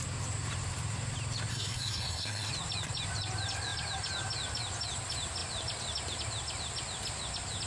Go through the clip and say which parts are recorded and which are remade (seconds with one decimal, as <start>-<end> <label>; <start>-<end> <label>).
0.0-1.5 recorded; 1.5-2.5 remade; 2.5-7.7 recorded